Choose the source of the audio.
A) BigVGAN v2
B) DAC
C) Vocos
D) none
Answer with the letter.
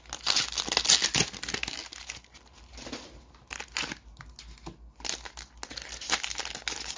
D